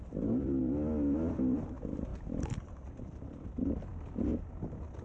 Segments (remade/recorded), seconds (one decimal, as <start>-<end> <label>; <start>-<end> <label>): 0.0-5.0 recorded